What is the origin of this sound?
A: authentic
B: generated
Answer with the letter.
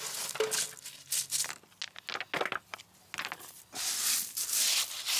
A